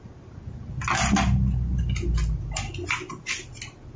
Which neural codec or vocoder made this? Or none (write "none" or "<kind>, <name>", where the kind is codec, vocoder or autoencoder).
none